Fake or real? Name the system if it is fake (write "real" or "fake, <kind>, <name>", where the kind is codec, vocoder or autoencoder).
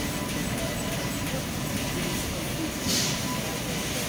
real